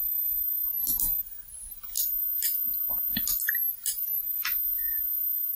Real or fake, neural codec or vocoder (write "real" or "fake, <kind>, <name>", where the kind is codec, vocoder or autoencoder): real